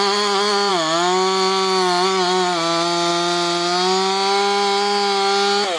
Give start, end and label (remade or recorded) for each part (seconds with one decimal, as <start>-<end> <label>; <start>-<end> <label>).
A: 0.0-5.8 recorded